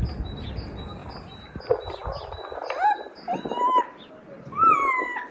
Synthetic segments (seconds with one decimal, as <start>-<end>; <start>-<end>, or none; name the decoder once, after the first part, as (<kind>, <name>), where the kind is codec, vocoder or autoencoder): none